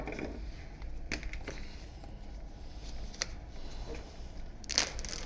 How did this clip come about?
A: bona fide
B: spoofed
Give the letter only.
A